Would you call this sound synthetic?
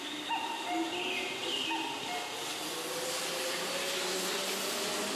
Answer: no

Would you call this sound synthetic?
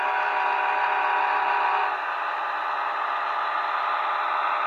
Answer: no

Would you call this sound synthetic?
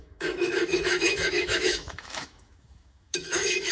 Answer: yes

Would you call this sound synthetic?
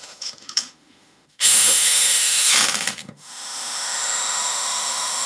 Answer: yes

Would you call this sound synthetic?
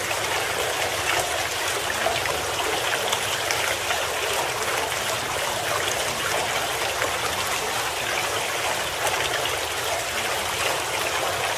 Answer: no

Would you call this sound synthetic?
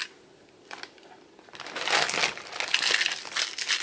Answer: no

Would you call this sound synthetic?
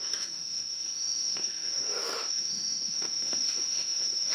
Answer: yes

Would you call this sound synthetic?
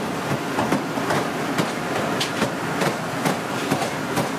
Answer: no